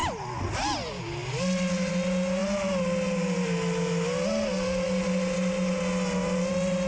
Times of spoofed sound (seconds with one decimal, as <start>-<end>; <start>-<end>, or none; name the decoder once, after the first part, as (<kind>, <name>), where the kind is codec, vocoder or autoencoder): none